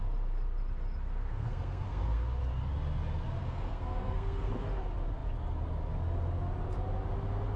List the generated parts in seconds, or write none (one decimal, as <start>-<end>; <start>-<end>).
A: 1.3-2.4; 3.4-4.5